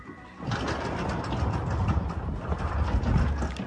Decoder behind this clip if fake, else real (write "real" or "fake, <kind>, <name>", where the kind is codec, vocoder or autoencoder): real